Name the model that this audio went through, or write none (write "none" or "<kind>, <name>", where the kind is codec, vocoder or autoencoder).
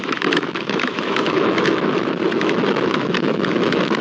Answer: autoencoder, DAC-VAE